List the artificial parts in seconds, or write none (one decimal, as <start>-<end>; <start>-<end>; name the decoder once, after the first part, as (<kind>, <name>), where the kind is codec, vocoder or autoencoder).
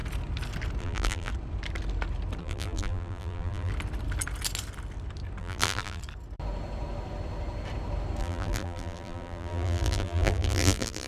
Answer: 0.8-1.3 (vocoder, BigVGAN v2); 2.4-3.7; 5.4-6.0; 8.2-11.1